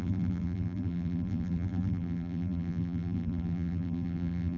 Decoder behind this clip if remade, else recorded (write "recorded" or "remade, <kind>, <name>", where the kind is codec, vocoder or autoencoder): remade, vocoder, BigVGAN v2